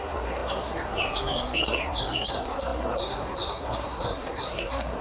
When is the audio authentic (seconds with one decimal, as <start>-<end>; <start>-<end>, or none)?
none